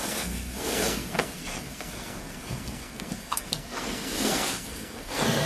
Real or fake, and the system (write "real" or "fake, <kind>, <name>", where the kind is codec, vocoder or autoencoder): fake, codec, SNAC